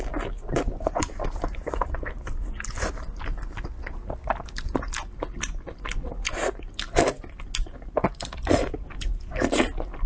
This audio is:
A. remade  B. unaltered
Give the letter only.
B